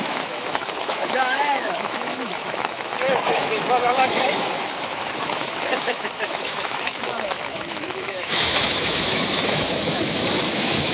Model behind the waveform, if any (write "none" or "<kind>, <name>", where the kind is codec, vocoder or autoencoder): autoencoder, DAC-VAE